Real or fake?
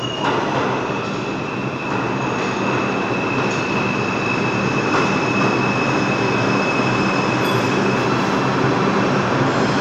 real